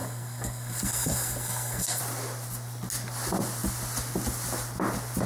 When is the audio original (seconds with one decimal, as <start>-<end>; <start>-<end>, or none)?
2.0-5.3